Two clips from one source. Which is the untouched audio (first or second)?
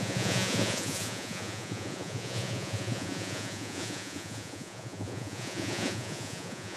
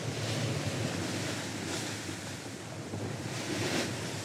second